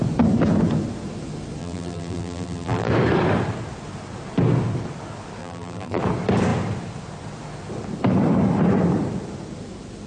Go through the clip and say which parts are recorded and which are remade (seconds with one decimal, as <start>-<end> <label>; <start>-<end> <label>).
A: 0.0-1.6 recorded; 1.6-2.9 remade; 2.9-5.4 recorded; 5.4-6.0 remade; 6.0-10.1 recorded

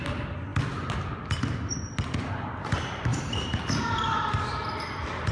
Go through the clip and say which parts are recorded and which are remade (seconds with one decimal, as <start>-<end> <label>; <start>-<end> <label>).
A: 0.0-5.3 recorded

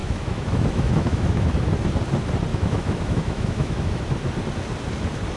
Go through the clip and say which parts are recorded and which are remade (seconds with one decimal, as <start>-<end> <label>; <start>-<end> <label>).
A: 0.0-1.7 remade; 1.7-2.5 recorded; 2.5-4.0 remade; 4.0-5.4 recorded

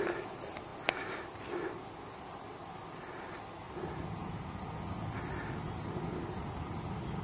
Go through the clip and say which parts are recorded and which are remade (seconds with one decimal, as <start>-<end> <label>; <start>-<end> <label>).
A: 0.0-7.2 recorded

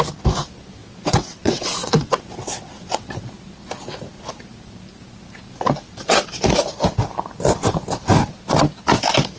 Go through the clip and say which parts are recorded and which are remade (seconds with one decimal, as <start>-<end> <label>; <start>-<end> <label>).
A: 0.0-0.8 recorded; 0.8-3.1 remade; 3.1-9.4 recorded

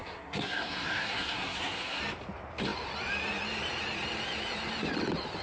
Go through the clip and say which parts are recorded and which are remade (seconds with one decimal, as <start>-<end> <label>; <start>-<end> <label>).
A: 0.0-2.0 remade; 2.0-5.4 recorded